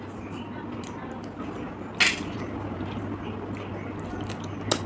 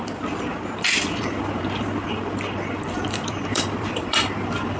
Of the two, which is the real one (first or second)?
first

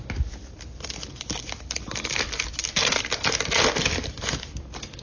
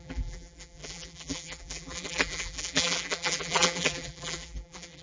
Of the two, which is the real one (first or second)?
first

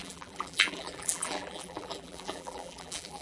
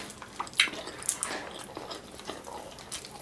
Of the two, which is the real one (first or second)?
second